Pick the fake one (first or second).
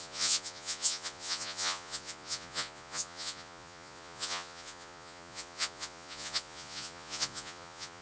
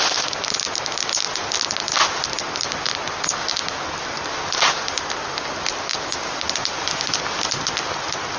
first